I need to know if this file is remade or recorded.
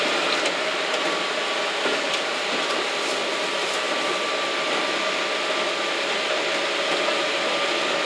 recorded